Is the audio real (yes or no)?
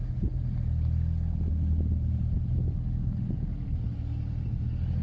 yes